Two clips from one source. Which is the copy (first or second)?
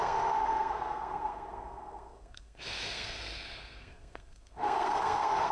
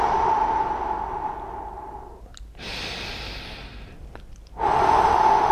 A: first